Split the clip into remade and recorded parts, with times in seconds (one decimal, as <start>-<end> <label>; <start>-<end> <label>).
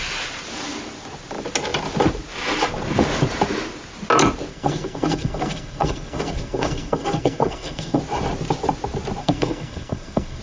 0.0-4.5 recorded; 4.5-8.0 remade; 8.0-9.2 recorded; 9.2-10.4 remade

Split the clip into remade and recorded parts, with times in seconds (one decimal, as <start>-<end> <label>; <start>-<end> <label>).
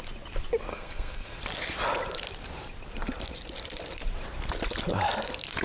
0.0-0.7 recorded; 0.7-1.4 remade; 1.4-5.6 recorded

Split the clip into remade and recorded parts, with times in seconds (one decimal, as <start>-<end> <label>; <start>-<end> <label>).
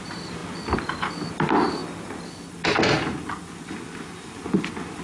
0.0-5.0 recorded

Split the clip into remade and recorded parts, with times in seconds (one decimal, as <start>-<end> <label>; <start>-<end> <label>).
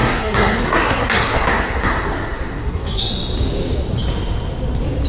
0.0-3.1 remade; 3.1-5.1 recorded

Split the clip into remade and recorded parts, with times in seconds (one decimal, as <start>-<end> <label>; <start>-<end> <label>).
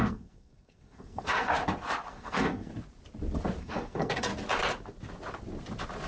0.0-1.5 remade; 1.5-2.1 recorded; 2.1-2.7 remade; 2.7-3.6 recorded; 3.6-4.3 remade; 4.3-6.1 recorded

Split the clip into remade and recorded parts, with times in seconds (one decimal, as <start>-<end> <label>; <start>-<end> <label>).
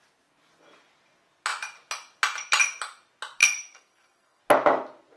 0.0-3.4 recorded; 3.4-4.4 remade; 4.4-5.2 recorded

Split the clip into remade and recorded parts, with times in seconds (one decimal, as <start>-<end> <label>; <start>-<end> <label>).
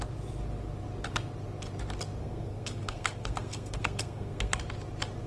0.0-2.2 recorded; 2.2-4.6 remade; 4.6-5.3 recorded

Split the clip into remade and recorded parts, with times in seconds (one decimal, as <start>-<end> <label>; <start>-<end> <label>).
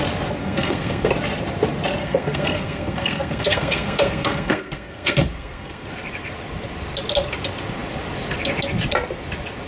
0.0-0.4 recorded; 0.4-1.1 remade; 1.1-2.0 recorded; 2.0-5.9 remade; 5.9-9.7 recorded